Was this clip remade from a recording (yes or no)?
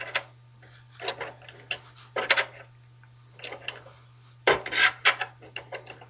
no